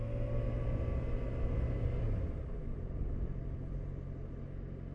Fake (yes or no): no